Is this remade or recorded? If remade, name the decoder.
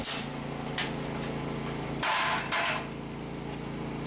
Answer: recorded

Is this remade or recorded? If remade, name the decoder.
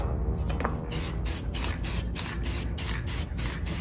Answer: recorded